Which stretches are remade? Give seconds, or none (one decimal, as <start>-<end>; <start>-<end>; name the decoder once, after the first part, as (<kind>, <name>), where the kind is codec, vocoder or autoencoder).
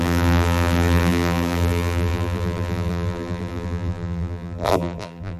0.0-5.4 (vocoder, BigVGAN v2)